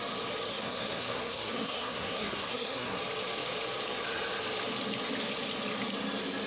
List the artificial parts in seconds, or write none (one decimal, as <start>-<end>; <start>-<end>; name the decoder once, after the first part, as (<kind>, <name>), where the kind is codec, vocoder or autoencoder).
0.5-3.0 (codec, SNAC)